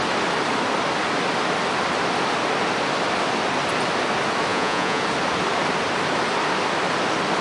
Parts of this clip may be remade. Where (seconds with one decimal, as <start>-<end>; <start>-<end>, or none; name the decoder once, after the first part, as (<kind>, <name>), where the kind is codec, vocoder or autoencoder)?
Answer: 4.5-5.0 (vocoder, Vocos)